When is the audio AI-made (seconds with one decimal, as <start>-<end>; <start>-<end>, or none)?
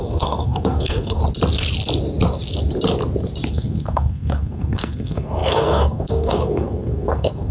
0.0-1.2; 3.5-7.5